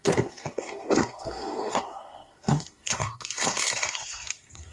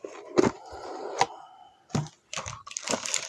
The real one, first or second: second